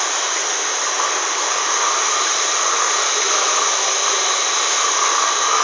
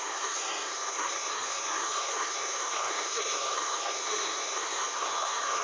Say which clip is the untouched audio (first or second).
first